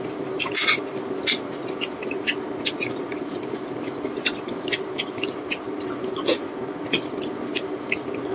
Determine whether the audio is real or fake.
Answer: real